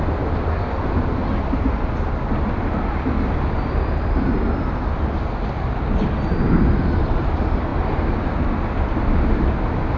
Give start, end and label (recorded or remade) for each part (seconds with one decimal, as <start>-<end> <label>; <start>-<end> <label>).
0.0-10.0 recorded